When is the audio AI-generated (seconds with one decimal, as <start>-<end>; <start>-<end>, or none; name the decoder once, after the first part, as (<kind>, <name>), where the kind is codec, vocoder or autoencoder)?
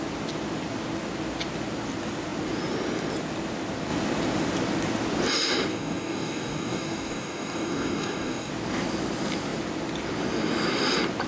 5.7-8.5 (codec, DAC)